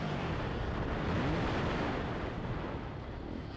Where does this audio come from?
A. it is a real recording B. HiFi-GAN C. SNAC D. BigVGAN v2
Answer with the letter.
A